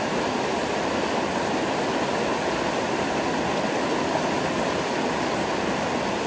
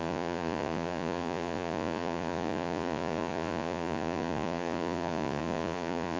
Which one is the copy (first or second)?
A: second